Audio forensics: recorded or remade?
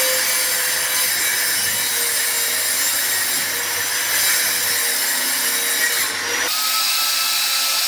recorded